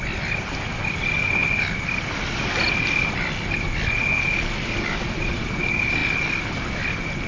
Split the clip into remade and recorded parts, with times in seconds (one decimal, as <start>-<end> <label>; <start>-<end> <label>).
0.0-7.3 recorded